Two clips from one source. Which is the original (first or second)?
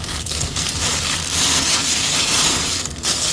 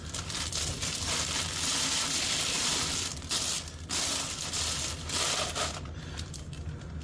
second